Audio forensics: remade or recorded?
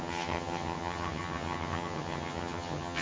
remade